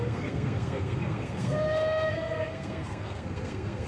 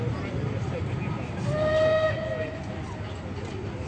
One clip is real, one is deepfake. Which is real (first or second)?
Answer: second